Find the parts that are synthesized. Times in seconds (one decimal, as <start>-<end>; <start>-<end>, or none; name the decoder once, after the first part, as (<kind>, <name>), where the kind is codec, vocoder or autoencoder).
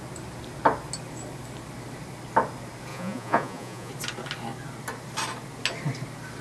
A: 2.9-3.9 (vocoder, Vocos)